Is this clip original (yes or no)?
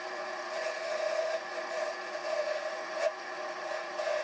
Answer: no